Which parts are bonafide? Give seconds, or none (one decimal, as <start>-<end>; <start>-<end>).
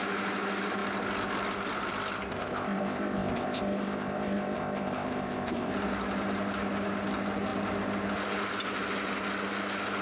0.0-2.3; 5.7-10.0